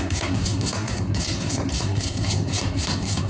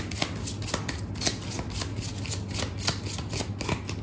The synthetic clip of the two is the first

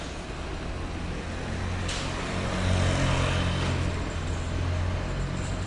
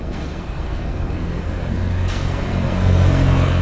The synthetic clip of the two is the second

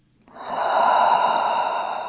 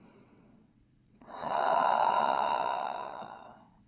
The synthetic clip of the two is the second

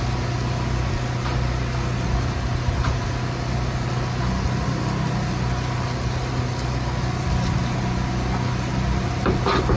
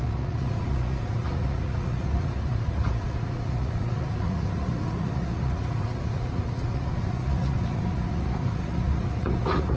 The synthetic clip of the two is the second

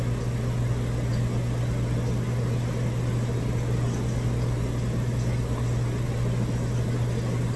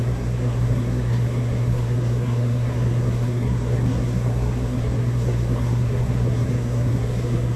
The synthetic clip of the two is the second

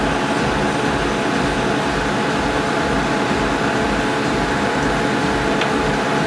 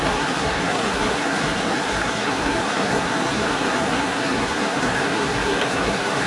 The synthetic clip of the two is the second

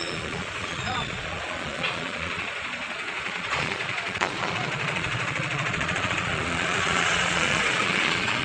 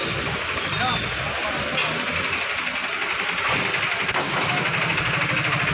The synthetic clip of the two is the first